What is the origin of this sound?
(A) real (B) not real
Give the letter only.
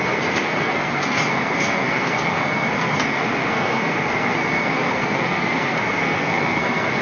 B